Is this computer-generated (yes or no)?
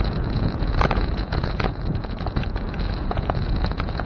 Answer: yes